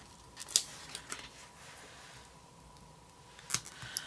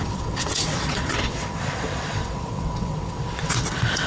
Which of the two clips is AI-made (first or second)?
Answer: second